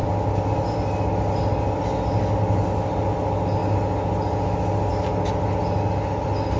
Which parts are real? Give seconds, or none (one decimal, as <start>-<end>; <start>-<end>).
0.0-6.6